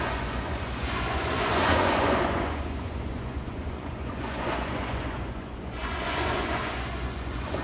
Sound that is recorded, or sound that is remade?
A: remade